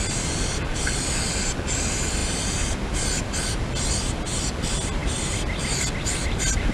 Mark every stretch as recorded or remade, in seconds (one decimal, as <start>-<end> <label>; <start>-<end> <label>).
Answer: 0.0-6.7 recorded